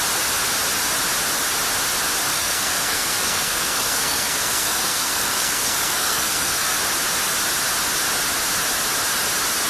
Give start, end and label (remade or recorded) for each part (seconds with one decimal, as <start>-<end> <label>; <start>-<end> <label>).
0.0-2.3 recorded; 2.3-6.8 remade; 6.8-9.7 recorded